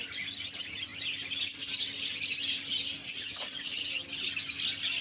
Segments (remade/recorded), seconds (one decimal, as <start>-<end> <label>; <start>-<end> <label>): 0.0-3.0 recorded; 3.0-3.9 remade; 3.9-5.0 recorded